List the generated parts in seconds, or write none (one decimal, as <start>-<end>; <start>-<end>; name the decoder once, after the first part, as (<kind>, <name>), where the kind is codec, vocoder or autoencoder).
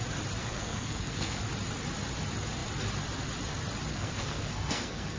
0.4-1.4 (codec, SNAC); 3.9-5.2